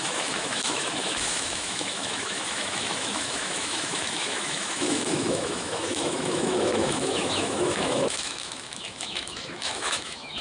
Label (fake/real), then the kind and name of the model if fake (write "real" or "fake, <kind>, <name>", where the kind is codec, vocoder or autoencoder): fake, autoencoder, DAC-VAE